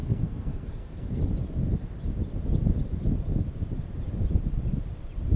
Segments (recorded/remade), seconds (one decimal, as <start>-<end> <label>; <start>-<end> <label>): 0.0-1.2 remade; 1.2-5.4 recorded

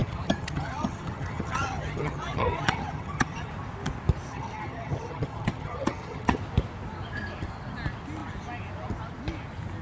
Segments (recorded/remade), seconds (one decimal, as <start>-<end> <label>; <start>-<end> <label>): 0.0-3.5 remade; 3.5-4.3 recorded; 4.3-6.4 remade; 6.4-9.8 recorded

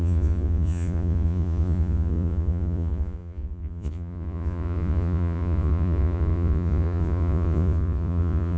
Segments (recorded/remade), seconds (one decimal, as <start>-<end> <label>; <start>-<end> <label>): 0.0-8.6 remade

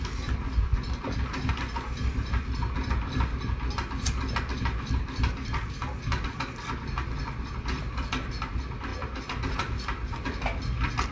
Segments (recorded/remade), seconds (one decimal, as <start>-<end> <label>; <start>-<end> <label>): 0.0-11.1 recorded

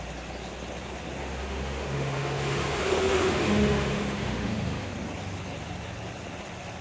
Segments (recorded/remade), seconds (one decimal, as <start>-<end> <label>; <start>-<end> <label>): 0.0-1.2 recorded; 1.2-4.9 remade; 4.9-6.8 recorded

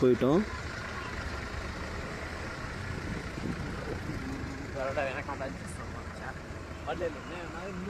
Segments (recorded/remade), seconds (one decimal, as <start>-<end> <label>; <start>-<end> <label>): 0.0-0.6 recorded; 0.6-1.5 remade; 1.5-4.1 recorded; 4.1-7.2 remade; 7.2-7.9 recorded

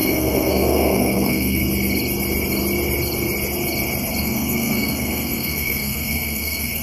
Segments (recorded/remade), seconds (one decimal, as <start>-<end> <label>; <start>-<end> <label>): 0.0-1.6 remade; 1.6-4.2 recorded; 4.2-6.8 remade

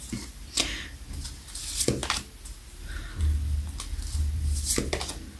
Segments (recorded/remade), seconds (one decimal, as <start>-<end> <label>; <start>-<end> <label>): 0.0-5.4 recorded